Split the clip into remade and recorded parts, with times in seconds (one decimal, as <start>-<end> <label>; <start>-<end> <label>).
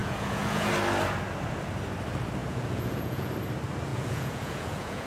0.0-0.7 remade; 0.7-2.4 recorded; 2.4-3.3 remade; 3.3-3.9 recorded; 3.9-5.1 remade